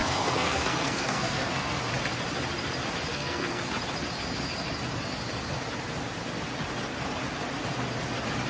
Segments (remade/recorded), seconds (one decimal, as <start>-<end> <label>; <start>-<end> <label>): 0.0-1.8 remade; 1.8-3.1 recorded; 3.1-3.6 remade; 3.6-8.5 recorded

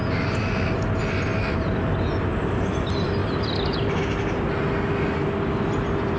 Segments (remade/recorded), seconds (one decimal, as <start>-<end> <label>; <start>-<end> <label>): 0.0-6.2 recorded

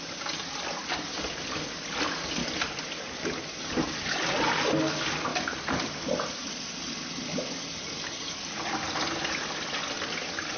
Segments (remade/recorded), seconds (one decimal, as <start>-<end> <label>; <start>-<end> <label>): 0.0-10.6 recorded

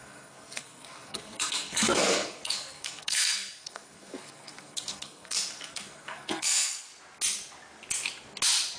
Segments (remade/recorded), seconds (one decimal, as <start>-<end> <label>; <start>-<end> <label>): 0.0-6.9 remade; 6.9-8.8 recorded

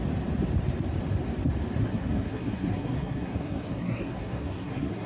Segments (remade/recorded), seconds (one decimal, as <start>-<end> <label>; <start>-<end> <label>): 0.0-1.8 recorded; 1.8-5.1 remade

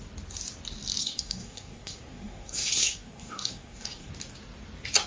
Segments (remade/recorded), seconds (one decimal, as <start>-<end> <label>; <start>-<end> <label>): 0.0-1.0 recorded; 1.0-4.1 remade; 4.1-5.1 recorded

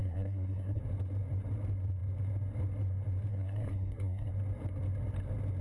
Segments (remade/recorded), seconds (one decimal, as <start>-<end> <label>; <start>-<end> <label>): 0.0-0.8 remade; 0.8-3.3 recorded; 3.3-4.3 remade; 4.3-5.6 recorded

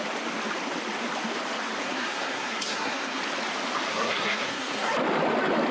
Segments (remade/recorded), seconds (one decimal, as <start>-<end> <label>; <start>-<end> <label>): 0.0-1.8 recorded; 1.8-3.2 remade; 3.2-3.9 recorded; 3.9-4.9 remade; 4.9-5.7 recorded